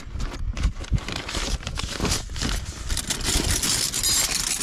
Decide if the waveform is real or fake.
real